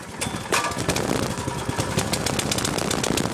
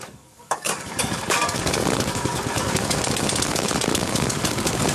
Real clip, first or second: first